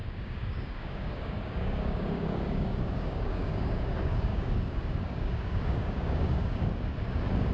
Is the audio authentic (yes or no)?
no